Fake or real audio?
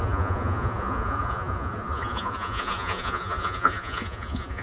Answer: fake